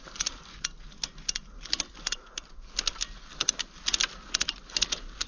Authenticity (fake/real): real